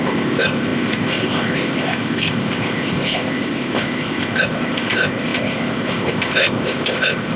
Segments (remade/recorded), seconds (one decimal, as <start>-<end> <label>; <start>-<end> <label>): 0.0-7.4 remade